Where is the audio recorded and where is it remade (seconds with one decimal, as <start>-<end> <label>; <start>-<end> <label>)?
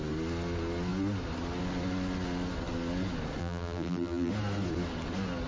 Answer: 0.0-3.4 recorded; 3.4-4.3 remade; 4.3-5.5 recorded